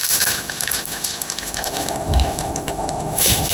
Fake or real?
fake